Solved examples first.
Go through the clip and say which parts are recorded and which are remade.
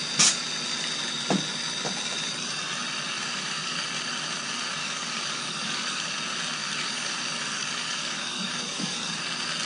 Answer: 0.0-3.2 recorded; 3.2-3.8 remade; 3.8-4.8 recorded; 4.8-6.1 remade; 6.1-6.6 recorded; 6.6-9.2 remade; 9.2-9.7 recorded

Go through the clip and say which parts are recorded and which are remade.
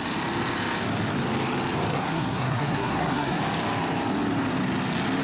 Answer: 0.0-1.9 recorded; 1.9-3.4 remade; 3.4-5.2 recorded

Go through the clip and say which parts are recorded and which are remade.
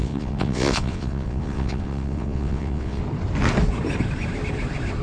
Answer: 0.0-3.0 remade; 3.0-5.0 recorded